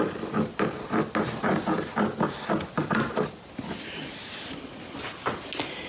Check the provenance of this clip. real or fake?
real